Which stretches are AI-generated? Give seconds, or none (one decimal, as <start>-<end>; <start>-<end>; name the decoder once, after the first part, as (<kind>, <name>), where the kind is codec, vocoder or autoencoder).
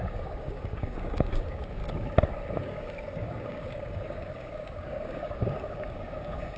0.0-1.8 (codec, DAC); 2.6-6.6